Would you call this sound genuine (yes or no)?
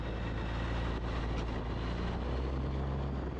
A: yes